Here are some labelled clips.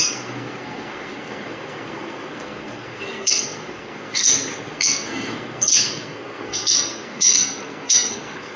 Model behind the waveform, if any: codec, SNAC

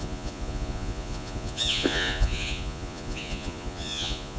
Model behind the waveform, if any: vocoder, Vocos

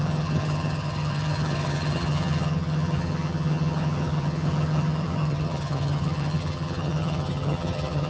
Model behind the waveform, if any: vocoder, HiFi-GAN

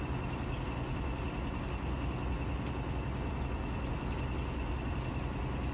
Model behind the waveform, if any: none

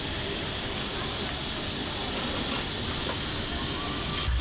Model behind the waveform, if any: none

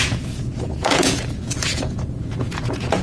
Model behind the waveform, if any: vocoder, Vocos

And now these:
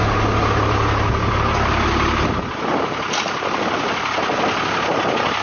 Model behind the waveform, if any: none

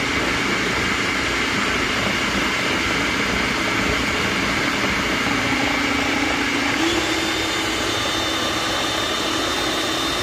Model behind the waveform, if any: none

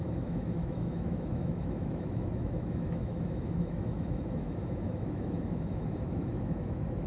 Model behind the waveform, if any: autoencoder, DAC-VAE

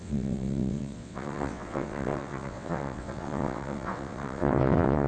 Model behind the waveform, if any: vocoder, WaveNeXt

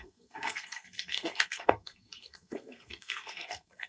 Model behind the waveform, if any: codec, SNAC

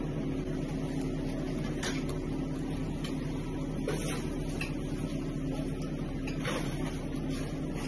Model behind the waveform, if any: none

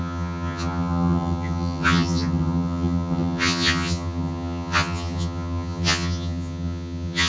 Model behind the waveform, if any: vocoder, HiFi-GAN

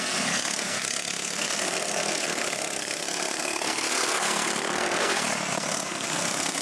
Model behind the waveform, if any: codec, SNAC